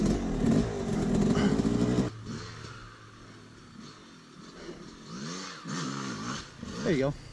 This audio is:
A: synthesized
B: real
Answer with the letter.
B